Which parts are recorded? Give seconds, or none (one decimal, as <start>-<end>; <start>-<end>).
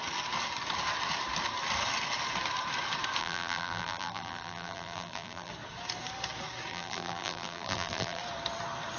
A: 0.0-3.2; 5.5-6.7; 8.2-9.0